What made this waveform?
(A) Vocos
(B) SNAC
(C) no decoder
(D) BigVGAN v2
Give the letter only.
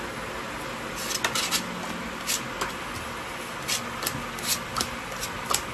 C